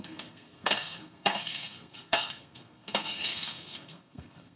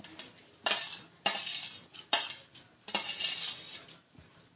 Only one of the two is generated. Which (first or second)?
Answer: first